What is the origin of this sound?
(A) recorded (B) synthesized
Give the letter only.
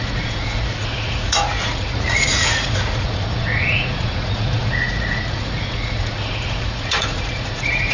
B